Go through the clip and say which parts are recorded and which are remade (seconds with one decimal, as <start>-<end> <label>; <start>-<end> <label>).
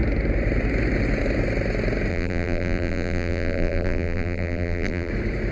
0.0-2.1 recorded; 2.1-5.1 remade; 5.1-5.5 recorded